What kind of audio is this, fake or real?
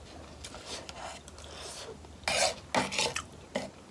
real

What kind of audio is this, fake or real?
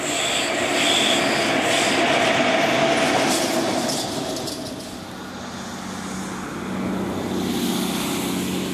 real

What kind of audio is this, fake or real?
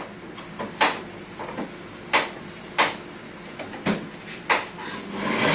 real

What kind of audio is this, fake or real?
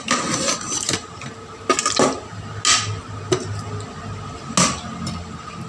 real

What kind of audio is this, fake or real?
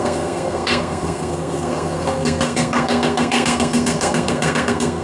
fake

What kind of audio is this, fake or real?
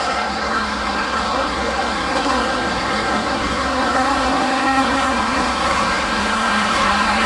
fake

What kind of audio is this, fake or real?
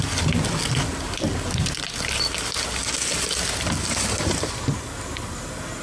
real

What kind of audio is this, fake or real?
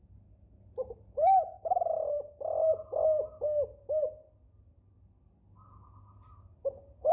real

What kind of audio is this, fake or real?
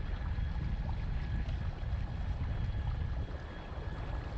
real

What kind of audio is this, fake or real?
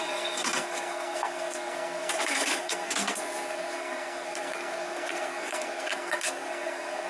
fake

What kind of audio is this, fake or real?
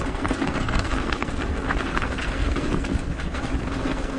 fake